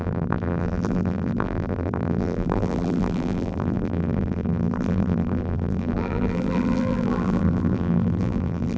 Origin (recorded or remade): remade